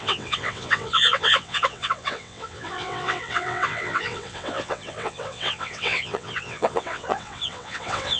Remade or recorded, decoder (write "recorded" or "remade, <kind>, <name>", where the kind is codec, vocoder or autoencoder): remade, vocoder, WaveNeXt